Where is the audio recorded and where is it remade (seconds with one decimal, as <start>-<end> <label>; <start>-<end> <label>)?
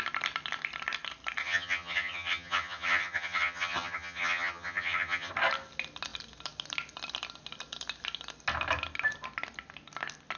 0.0-1.4 recorded; 1.4-5.3 remade; 5.3-10.4 recorded